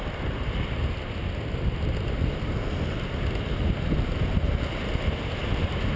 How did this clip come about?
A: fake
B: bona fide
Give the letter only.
B